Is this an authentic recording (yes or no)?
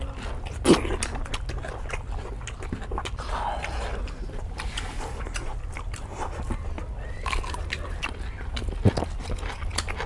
yes